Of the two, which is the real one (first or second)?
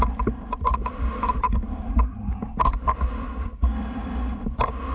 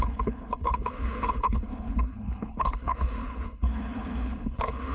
first